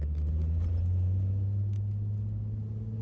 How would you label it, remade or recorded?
recorded